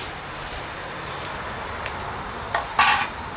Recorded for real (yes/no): yes